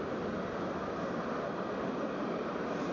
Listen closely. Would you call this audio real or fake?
real